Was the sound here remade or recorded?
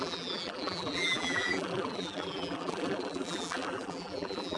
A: remade